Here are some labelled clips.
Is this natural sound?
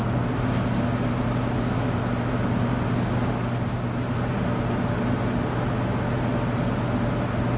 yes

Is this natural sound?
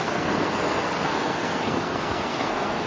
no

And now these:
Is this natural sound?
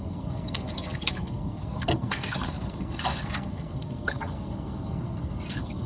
no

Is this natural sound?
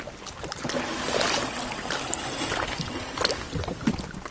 yes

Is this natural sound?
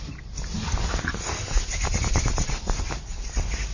yes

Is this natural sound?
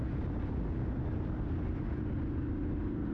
yes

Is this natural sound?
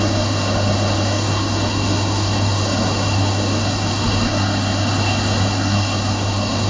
no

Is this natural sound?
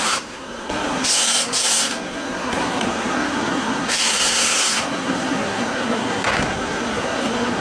no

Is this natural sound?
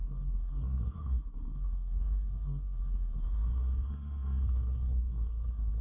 no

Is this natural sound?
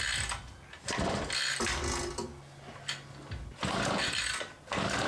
yes